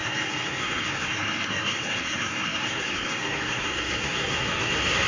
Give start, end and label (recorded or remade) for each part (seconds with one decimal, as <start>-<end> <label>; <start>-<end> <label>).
0.0-5.1 remade

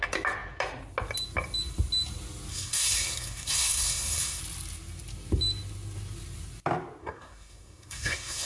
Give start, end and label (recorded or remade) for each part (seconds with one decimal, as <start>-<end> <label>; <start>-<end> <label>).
0.0-2.5 recorded; 2.5-4.4 remade; 4.4-7.0 recorded; 7.0-8.5 remade

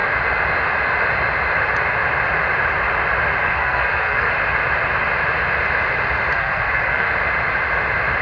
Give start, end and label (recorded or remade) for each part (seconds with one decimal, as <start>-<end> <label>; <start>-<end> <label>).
0.0-3.4 recorded; 3.4-4.3 remade; 4.3-6.3 recorded; 6.3-7.1 remade; 7.1-8.2 recorded

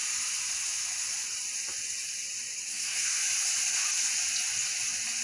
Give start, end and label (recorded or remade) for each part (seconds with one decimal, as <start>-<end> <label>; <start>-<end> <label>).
0.0-2.7 recorded; 2.7-3.2 remade; 3.2-5.2 recorded

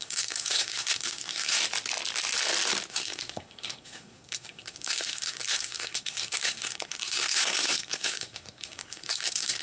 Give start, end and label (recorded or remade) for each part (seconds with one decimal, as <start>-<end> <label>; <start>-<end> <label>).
0.0-1.6 remade; 1.6-2.9 recorded; 2.9-9.6 remade

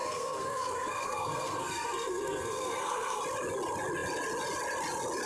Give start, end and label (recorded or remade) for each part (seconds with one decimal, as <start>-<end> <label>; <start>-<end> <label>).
0.0-3.2 remade; 3.2-5.3 recorded

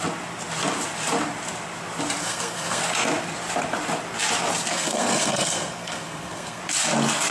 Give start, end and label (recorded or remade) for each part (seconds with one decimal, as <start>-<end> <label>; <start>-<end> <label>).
0.0-2.2 recorded; 2.2-2.8 remade; 2.8-4.7 recorded; 4.7-6.6 remade; 6.6-7.3 recorded

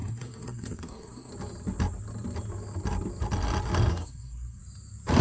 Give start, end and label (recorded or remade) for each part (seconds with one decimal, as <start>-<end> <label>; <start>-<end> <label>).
0.0-1.3 remade; 1.3-3.9 recorded; 3.9-4.6 remade; 4.6-5.2 recorded